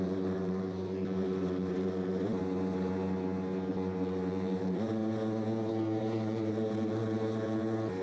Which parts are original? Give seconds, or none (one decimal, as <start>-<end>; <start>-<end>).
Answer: 2.4-3.7; 5.0-5.7